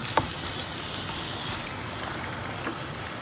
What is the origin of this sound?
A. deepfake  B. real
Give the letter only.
B